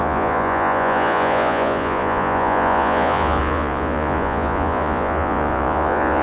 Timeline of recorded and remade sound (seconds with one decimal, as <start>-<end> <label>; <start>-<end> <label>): 0.0-6.2 remade